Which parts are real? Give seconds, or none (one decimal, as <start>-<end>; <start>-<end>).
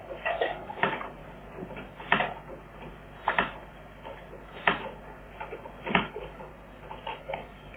1.2-5.9; 6.5-7.2